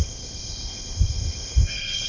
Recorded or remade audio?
remade